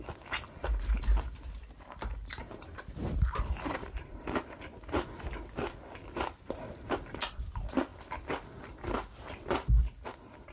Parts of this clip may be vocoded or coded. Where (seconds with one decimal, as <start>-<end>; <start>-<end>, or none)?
0.6-4.2